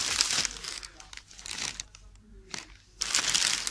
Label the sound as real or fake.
real